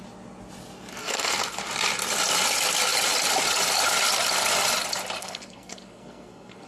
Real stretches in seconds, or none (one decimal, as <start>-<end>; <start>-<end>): 0.0-1.0; 1.6-5.2